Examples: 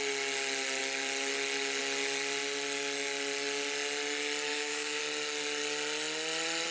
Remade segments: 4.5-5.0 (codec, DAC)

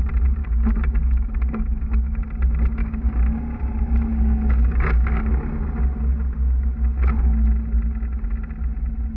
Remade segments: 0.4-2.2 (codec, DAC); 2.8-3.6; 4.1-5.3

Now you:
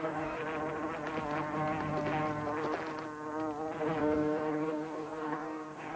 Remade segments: 0.0-0.4 (codec, DAC); 4.0-6.0